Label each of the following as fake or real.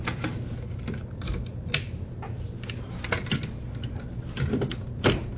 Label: real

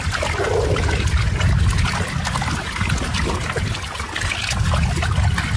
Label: real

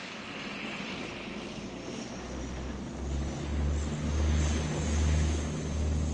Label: real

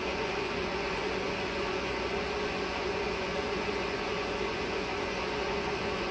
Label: fake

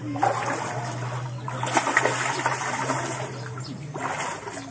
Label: real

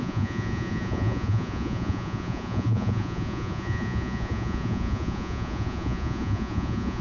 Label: fake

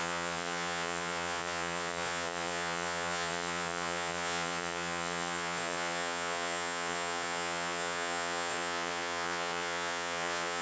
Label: fake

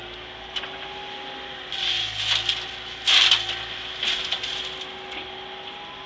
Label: real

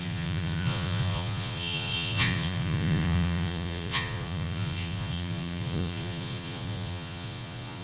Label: fake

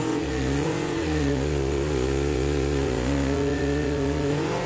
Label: fake